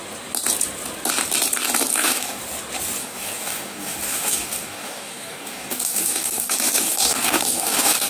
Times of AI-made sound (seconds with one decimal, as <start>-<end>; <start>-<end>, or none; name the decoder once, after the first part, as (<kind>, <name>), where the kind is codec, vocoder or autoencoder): 1.9-2.4 (codec, DAC); 3.0-8.1